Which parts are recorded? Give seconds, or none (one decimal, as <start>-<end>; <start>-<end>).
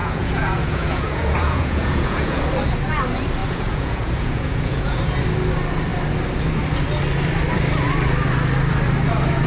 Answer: 2.4-3.4; 5.0-9.5